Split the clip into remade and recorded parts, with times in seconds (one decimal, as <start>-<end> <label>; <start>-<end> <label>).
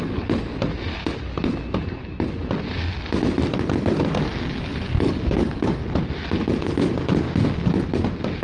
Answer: 0.0-0.5 remade; 0.5-3.8 recorded; 3.8-5.8 remade; 5.8-8.4 recorded